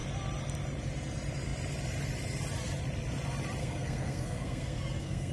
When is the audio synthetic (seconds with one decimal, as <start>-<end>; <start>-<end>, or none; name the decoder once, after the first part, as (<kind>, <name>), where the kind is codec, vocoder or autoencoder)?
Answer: 3.6-5.3 (codec, SNAC)